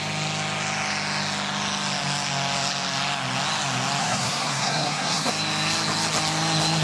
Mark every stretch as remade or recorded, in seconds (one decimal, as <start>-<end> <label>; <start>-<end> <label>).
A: 0.0-4.0 recorded; 4.0-5.3 remade; 5.3-6.8 recorded